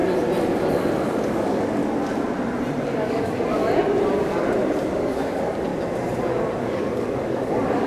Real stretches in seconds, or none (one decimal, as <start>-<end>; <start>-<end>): 0.0-1.1; 1.8-2.9; 3.6-4.9; 5.7-6.6